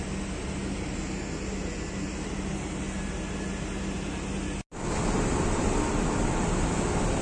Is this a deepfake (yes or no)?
no